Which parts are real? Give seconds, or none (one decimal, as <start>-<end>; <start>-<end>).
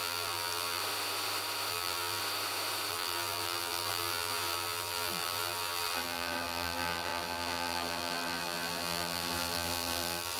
0.8-1.7; 2.2-2.9